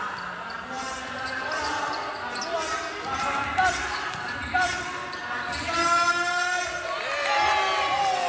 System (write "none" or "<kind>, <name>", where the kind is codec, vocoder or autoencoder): none